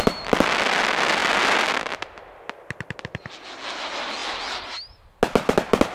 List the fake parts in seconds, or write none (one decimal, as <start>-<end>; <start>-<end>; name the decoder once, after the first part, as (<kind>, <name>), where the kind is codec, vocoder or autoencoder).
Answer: none